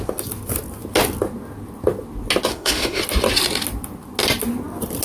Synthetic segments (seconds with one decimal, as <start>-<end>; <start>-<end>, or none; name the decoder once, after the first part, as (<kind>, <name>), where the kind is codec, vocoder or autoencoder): 2.5-3.0 (autoencoder, DAC-VAE)